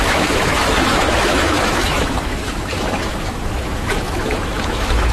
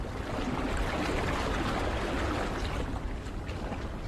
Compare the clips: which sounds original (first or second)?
second